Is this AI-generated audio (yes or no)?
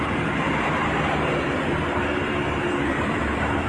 yes